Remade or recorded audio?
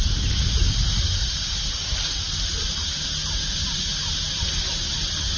recorded